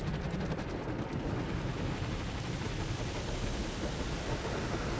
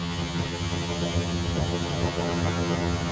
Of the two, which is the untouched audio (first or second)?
first